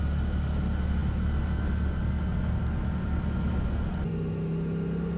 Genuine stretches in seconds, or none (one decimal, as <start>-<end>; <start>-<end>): 0.0-5.2